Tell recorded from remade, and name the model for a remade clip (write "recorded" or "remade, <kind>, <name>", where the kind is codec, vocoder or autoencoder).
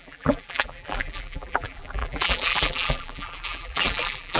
remade, vocoder, BigVGAN v2